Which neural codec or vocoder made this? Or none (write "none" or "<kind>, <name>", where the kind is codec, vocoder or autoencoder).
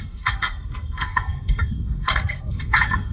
codec, SNAC